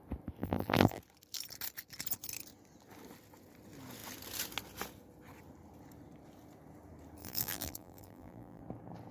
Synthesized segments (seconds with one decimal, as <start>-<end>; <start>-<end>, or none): 0.4-1.0; 7.2-8.6